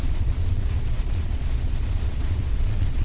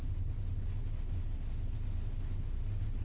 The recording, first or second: second